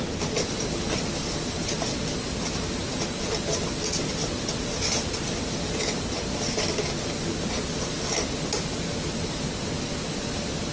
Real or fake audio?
real